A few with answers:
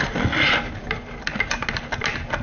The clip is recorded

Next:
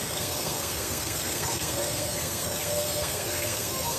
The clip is remade